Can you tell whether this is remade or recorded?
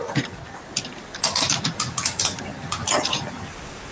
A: recorded